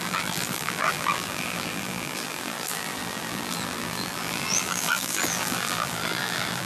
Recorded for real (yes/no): no